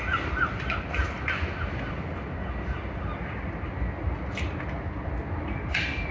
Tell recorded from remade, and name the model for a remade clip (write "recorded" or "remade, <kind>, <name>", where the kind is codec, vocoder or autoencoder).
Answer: recorded